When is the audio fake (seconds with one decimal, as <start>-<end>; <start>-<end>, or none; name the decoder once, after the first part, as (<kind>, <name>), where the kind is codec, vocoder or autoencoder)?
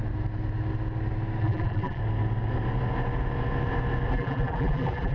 1.4-2.0 (vocoder, BigVGAN v2); 4.1-5.1